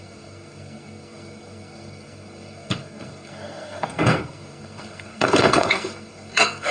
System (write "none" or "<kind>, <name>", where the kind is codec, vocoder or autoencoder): codec, SNAC